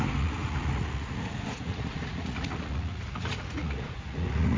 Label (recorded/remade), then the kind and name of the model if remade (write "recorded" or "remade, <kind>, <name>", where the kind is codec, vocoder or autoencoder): remade, vocoder, Vocos